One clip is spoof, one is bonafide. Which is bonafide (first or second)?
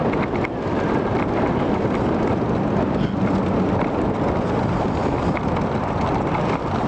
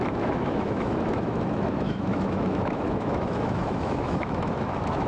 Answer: first